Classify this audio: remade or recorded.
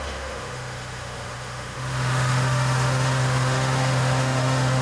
remade